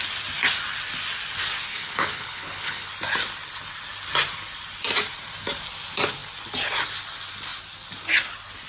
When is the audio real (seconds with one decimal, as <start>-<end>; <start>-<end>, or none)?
0.0-1.7; 2.9-8.7